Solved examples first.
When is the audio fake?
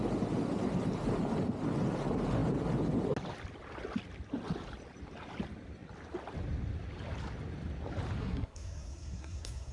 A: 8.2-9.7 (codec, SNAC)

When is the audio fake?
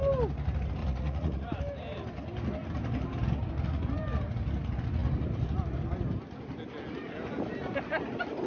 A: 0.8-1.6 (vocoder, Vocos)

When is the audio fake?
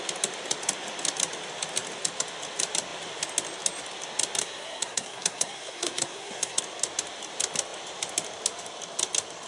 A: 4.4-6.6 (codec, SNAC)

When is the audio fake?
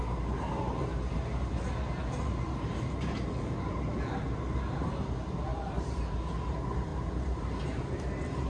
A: 5.5-6.2 (vocoder, BigVGAN v2)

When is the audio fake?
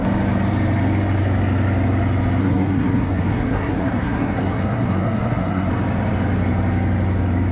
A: 2.4-5.7 (codec, SNAC)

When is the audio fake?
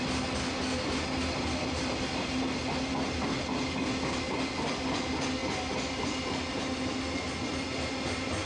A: none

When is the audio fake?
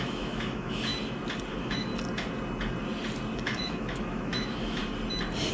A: 0.0-0.9 (autoencoder, DAC-VAE); 1.5-1.9; 3.4-4.8